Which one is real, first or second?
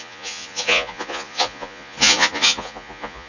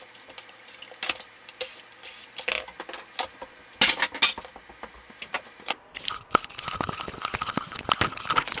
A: second